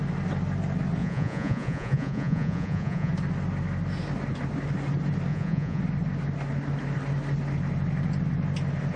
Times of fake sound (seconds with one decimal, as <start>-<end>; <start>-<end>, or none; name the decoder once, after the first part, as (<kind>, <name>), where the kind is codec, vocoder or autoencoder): 1.0-3.1 (vocoder, Vocos); 5.3-5.8